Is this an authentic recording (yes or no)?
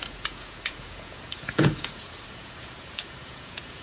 no